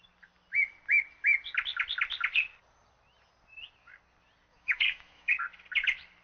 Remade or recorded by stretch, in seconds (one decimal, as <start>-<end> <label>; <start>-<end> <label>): 0.0-4.5 recorded; 4.5-5.3 remade; 5.3-6.2 recorded